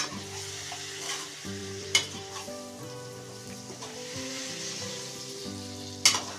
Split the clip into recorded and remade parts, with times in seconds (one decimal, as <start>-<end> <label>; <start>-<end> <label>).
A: 0.0-1.6 recorded; 1.6-5.4 remade; 5.4-6.4 recorded